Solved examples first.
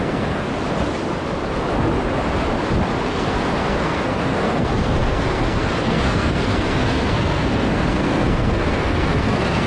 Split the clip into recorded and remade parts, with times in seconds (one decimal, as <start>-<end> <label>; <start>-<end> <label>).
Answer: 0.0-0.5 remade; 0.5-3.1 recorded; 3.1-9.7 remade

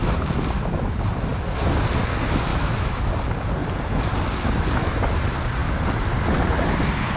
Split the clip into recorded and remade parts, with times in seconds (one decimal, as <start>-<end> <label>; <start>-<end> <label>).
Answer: 0.0-2.5 recorded; 2.5-3.1 remade; 3.1-7.2 recorded

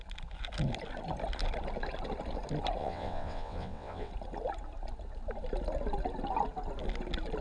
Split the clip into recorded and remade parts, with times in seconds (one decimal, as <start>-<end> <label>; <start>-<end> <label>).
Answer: 0.0-2.8 recorded; 2.8-4.1 remade; 4.1-7.4 recorded

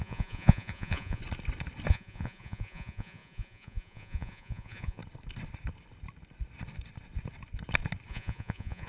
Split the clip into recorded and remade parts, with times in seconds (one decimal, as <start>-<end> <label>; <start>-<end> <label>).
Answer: 0.0-1.2 remade; 1.2-1.9 recorded; 1.9-5.0 remade; 5.0-8.1 recorded; 8.1-8.9 remade

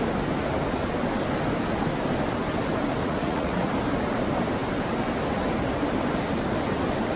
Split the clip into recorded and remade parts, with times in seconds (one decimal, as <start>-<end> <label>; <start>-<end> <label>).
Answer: 0.0-3.0 recorded; 3.0-3.7 remade; 3.7-7.2 recorded

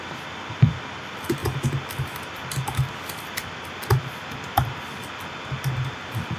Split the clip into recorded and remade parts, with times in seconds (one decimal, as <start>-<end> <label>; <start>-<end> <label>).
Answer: 0.0-6.4 recorded

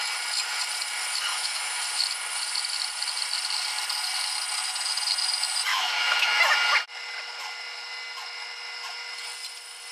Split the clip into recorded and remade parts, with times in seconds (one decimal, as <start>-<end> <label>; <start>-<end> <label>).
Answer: 0.0-1.3 recorded; 1.3-1.8 remade; 1.8-5.7 recorded; 5.7-6.4 remade; 6.4-9.9 recorded

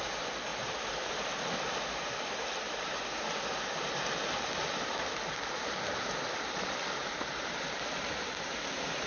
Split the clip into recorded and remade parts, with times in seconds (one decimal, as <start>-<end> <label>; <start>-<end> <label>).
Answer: 0.0-0.5 recorded; 0.5-1.1 remade; 1.1-7.0 recorded; 7.0-7.6 remade; 7.6-9.1 recorded